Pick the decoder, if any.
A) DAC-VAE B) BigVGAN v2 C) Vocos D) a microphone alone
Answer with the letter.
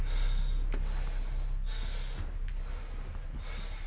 D